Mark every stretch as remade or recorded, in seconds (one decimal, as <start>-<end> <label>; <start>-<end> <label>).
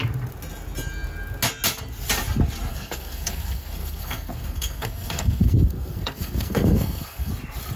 0.0-2.7 recorded; 2.7-7.3 remade; 7.3-7.8 recorded